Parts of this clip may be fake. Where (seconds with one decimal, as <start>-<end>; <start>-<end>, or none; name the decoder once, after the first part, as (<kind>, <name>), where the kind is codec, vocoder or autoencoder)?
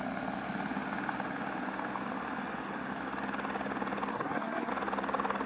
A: 4.1-4.7 (codec, SNAC)